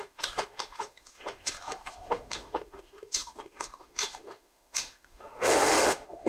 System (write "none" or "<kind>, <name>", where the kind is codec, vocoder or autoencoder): autoencoder, DAC-VAE